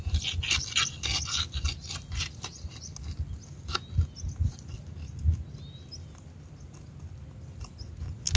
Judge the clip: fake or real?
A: real